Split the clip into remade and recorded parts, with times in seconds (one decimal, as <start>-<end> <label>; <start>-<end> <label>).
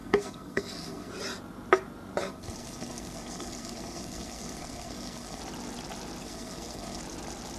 0.0-1.1 remade; 1.1-2.2 recorded; 2.2-5.4 remade; 5.4-6.2 recorded; 6.2-7.0 remade; 7.0-7.6 recorded